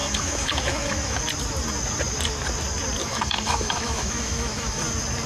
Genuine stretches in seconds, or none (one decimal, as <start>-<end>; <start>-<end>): 1.2-3.0; 4.8-5.3